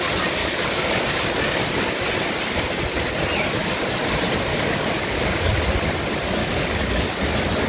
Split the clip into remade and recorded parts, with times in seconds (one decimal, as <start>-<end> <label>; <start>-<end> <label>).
0.0-0.4 recorded; 0.4-1.5 remade; 1.5-4.5 recorded; 4.5-5.5 remade; 5.5-6.4 recorded; 6.4-7.2 remade; 7.2-7.7 recorded